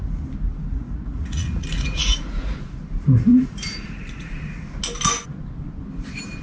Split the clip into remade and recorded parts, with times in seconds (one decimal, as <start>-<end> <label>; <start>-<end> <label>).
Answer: 0.0-0.7 recorded; 0.7-2.8 remade; 2.8-3.3 recorded; 3.3-4.3 remade; 4.3-6.4 recorded